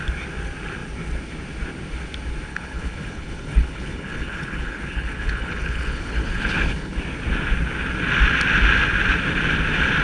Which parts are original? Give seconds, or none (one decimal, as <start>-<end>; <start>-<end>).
0.0-2.5; 7.0-10.0